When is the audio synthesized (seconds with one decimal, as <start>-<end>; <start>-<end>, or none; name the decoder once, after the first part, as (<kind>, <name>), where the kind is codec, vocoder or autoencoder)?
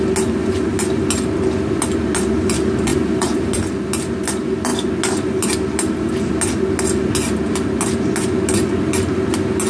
2.9-3.5 (vocoder, BigVGAN v2)